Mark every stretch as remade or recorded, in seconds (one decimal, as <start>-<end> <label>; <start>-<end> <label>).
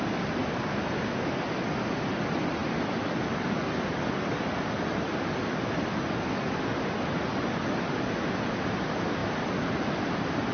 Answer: 0.0-10.5 recorded